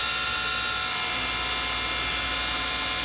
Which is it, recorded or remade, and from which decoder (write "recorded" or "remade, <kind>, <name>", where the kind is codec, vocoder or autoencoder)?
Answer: recorded